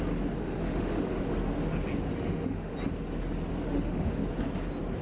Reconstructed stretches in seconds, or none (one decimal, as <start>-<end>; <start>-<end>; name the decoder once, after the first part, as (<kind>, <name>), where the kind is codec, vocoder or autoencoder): 0.4-1.2 (autoencoder, DAC-VAE); 2.1-2.7; 3.7-4.2